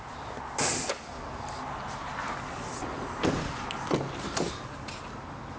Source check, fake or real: real